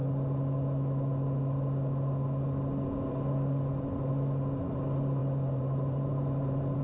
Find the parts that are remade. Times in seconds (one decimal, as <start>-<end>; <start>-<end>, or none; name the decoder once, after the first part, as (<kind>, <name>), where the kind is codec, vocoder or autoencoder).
5.2-6.8 (vocoder, BigVGAN v2)